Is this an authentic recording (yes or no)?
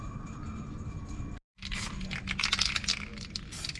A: yes